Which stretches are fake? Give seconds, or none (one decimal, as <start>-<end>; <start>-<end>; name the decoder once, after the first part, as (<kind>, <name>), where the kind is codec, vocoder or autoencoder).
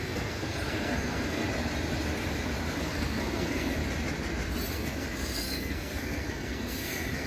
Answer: 0.0-1.4 (codec, SNAC); 2.8-3.8; 4.7-7.3